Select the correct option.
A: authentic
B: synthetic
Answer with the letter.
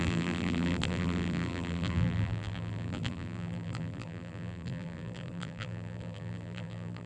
B